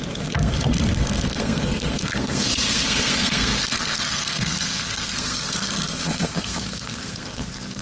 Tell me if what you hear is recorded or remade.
remade